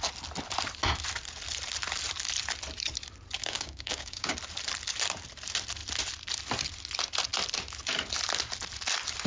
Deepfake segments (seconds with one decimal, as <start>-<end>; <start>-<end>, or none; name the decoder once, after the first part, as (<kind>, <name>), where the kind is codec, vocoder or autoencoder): 3.4-4.3 (codec, DAC)